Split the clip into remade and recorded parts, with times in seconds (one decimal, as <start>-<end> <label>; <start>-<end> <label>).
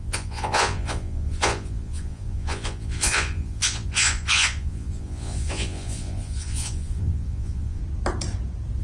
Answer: 0.0-7.8 remade; 7.8-8.8 recorded